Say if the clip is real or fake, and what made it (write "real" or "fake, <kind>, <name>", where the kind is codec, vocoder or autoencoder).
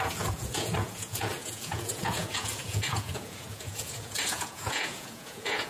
fake, vocoder, Vocos